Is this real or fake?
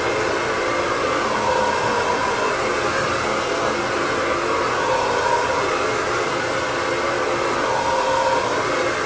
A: real